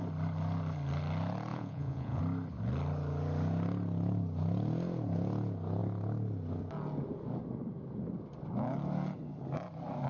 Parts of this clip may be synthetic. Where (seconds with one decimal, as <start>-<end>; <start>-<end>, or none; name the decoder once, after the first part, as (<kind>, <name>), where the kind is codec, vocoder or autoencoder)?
1.5-2.2 (vocoder, Vocos)